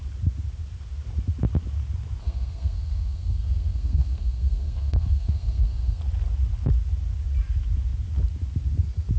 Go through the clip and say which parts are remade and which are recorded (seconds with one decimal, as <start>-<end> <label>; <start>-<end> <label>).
0.0-2.2 recorded; 2.2-6.0 remade; 6.0-9.2 recorded